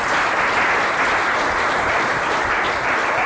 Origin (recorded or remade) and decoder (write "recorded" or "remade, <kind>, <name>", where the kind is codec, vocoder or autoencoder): recorded